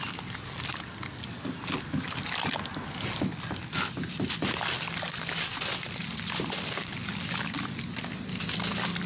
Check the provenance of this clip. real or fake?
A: real